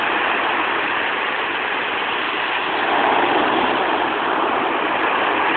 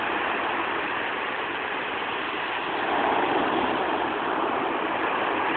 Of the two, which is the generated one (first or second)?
second